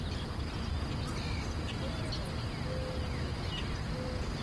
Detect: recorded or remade recorded